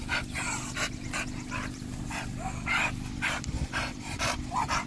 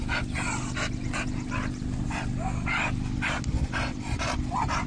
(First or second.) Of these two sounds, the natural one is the second